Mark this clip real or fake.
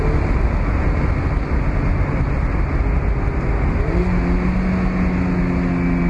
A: real